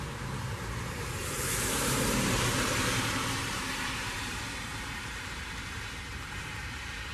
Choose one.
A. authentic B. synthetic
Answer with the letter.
B